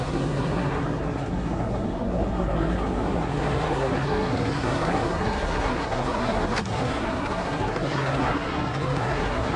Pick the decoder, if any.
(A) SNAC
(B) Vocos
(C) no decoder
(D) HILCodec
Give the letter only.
A